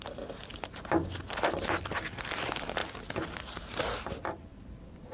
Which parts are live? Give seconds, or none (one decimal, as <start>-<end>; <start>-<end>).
0.5-1.3; 2.8-4.0